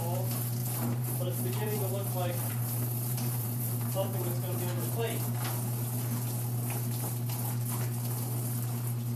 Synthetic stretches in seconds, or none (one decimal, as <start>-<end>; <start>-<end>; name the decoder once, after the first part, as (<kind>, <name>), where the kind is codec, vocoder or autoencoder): 0.6-4.6 (vocoder, BigVGAN v2)